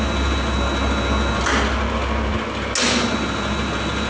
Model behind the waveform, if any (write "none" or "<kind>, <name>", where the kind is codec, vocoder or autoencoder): none